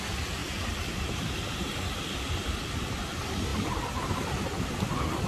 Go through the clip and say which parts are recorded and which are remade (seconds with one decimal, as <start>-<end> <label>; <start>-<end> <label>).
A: 0.0-0.4 recorded; 0.4-2.0 remade; 2.0-3.5 recorded; 3.5-4.6 remade; 4.6-5.3 recorded